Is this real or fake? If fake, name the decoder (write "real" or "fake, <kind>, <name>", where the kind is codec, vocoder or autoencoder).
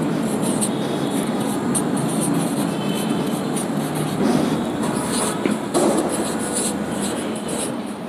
real